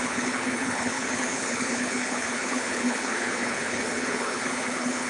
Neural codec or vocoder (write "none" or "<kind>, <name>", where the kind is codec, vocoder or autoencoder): codec, HILCodec